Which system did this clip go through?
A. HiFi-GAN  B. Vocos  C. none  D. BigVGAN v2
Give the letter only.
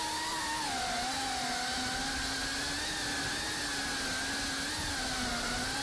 C